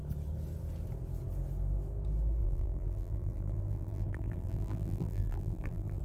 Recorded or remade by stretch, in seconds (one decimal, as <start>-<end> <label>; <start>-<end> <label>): 0.0-2.4 recorded; 2.4-6.0 remade